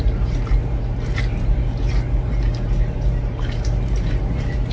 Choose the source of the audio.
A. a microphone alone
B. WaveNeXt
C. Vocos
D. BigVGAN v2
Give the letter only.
D